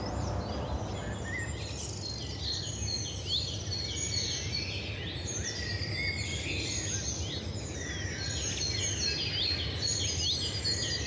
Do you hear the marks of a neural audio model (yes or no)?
no